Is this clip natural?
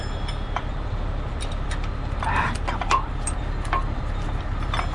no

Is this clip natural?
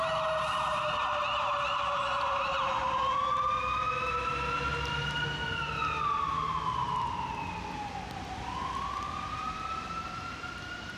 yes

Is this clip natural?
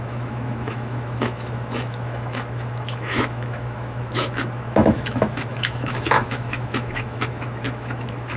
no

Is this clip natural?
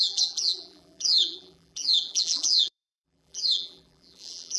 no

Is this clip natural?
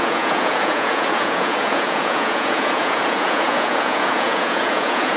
no